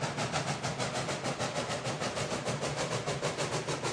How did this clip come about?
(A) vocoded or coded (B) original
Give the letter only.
B